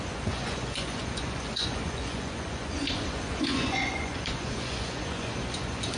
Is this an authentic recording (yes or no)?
no